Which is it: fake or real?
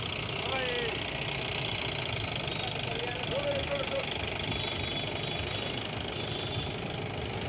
real